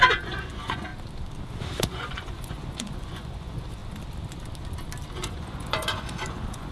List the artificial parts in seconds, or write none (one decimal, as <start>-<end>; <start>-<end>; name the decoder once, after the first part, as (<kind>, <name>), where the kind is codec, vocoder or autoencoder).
0.0-0.9 (vocoder, Vocos); 1.8-3.8; 5.1-6.7

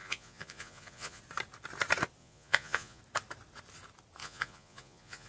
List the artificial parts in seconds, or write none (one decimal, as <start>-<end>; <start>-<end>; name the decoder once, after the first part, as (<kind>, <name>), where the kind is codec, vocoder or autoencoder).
0.0-1.2 (vocoder, Vocos); 2.2-3.0; 4.2-5.3

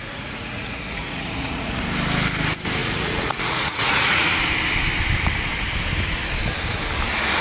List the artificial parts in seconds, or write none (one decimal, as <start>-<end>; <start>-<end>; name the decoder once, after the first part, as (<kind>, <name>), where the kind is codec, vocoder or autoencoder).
0.0-1.8 (vocoder, Vocos); 2.8-4.3

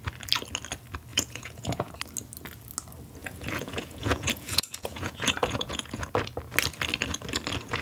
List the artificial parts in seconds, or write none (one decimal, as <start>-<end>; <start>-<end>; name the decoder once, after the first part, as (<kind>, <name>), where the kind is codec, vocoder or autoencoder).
1.1-1.9 (vocoder, Vocos); 3.2-6.1

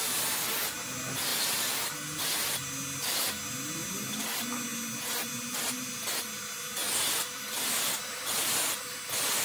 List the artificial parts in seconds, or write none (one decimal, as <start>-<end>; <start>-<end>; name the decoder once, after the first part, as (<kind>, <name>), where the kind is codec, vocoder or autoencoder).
none